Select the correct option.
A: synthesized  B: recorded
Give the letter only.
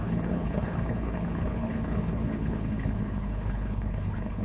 A